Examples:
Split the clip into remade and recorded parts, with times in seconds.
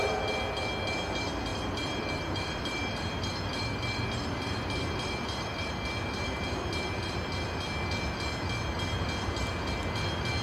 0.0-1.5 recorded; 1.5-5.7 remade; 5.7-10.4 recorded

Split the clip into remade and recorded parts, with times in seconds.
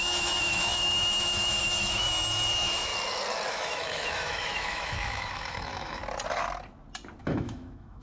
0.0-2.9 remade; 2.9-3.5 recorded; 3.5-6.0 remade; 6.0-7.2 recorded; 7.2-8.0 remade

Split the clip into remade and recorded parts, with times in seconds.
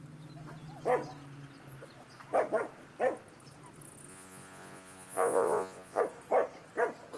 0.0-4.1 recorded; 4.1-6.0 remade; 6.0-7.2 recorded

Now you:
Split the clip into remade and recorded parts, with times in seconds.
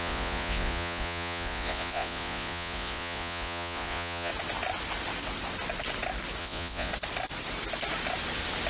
0.0-4.3 remade; 4.3-6.4 recorded; 6.4-6.9 remade; 6.9-8.7 recorded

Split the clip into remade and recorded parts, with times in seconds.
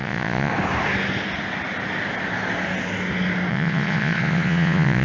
0.0-0.5 remade; 0.5-3.5 recorded; 3.5-5.0 remade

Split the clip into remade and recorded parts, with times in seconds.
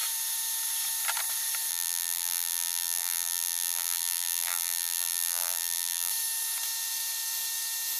0.0-1.7 recorded; 1.7-6.1 remade; 6.1-8.0 recorded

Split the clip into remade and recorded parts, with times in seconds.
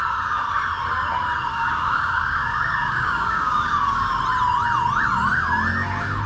0.0-1.5 recorded; 1.5-4.2 remade; 4.2-6.3 recorded